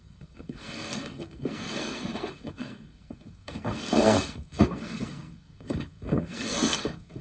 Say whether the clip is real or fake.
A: fake